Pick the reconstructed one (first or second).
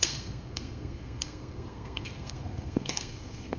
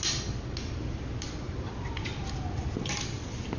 first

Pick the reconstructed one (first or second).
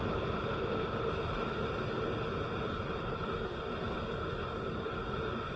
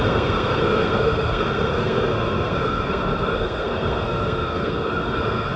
second